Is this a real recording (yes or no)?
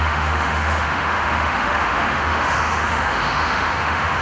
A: no